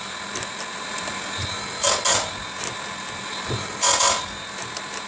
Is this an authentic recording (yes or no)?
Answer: yes